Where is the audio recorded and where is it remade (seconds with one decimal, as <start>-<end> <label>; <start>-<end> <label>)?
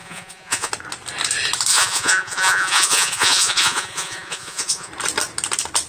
0.0-0.7 remade; 0.7-1.7 recorded; 1.7-4.9 remade; 4.9-5.9 recorded